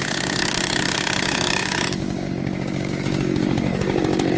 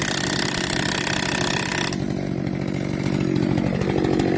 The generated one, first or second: first